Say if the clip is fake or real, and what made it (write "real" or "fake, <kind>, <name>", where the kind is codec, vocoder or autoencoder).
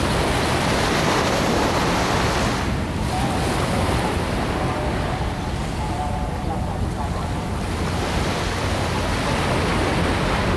real